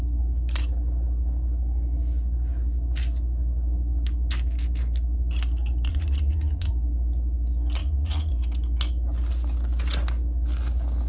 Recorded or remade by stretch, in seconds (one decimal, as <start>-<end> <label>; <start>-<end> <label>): 0.0-5.9 recorded; 5.9-6.7 remade; 6.7-7.8 recorded; 7.8-8.3 remade; 8.3-11.1 recorded